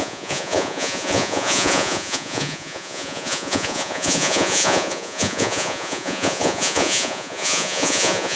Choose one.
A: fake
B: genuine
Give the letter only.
A